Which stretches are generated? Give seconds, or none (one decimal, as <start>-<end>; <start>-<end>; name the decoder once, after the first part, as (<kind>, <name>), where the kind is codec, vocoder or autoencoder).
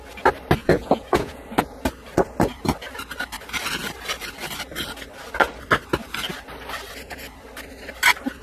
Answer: 0.6-1.4 (vocoder, Vocos)